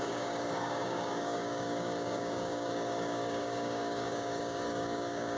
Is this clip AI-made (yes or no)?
yes